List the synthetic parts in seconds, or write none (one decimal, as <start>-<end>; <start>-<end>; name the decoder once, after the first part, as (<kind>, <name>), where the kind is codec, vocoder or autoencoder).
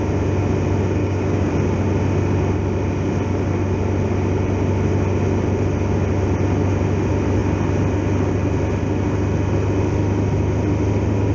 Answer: 1.0-1.5 (codec, DAC)